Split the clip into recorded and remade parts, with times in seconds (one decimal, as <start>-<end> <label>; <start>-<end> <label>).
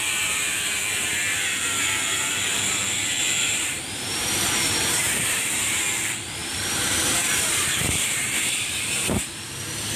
0.0-10.0 remade